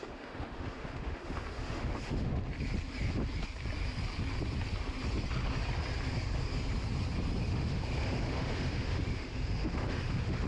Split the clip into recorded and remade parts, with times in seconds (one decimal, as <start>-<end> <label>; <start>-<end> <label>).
0.0-2.3 remade; 2.3-7.4 recorded; 7.4-10.5 remade